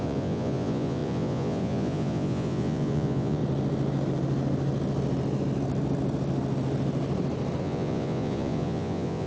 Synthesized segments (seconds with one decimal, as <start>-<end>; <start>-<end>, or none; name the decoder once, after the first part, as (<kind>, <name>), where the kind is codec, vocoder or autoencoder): 0.0-3.4 (vocoder, Vocos); 7.6-9.3